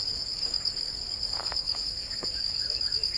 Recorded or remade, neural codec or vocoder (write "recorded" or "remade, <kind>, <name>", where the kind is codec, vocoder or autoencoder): remade, codec, DAC